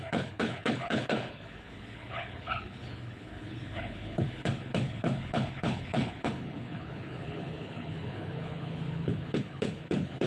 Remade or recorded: remade